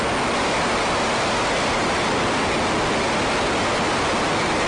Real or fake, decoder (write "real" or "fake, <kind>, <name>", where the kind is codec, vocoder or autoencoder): real